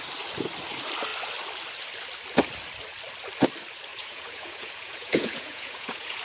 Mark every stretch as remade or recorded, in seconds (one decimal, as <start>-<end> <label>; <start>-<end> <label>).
0.0-3.9 recorded; 3.9-6.2 remade